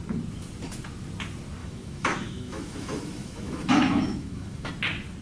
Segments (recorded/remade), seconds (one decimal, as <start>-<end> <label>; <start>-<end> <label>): 0.0-1.6 recorded; 1.6-4.7 remade; 4.7-5.2 recorded